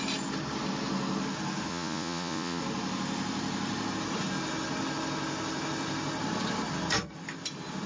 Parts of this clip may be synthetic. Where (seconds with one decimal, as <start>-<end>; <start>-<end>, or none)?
1.7-2.6

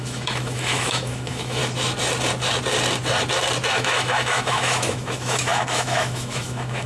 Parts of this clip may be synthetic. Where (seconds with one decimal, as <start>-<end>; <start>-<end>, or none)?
0.0-1.6; 3.7-6.9

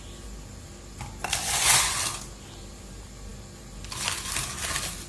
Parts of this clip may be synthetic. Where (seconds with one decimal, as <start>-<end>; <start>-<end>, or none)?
1.4-2.0

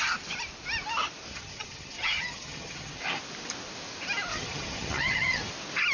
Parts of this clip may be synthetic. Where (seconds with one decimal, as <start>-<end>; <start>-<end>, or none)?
1.3-3.0; 4.3-5.5

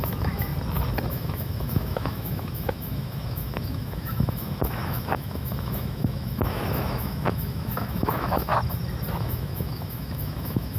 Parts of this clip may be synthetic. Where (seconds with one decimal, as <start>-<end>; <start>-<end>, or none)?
0.0-0.5; 1.1-8.5; 9.2-10.8

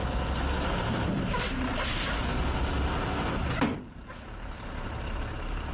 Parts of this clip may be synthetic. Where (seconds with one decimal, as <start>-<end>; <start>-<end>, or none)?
0.8-2.3; 3.9-5.7

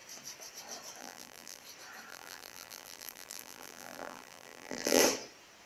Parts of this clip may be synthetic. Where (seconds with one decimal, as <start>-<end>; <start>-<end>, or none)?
1.0-1.6; 2.1-5.0